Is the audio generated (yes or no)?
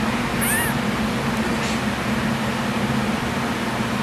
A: no